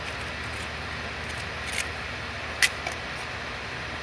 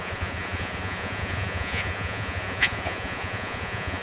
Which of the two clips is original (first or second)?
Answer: first